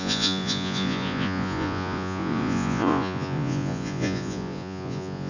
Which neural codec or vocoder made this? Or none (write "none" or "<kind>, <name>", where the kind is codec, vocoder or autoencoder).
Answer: vocoder, Vocos